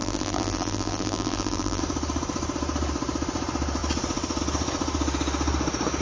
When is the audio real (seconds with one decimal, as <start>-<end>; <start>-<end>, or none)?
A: 1.8-6.0